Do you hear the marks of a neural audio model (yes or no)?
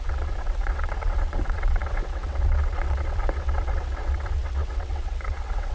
yes